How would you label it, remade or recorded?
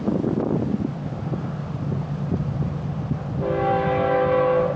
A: recorded